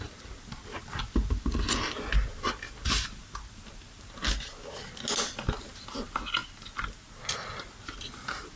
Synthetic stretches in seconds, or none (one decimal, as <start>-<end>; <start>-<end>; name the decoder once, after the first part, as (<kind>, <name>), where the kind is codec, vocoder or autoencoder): none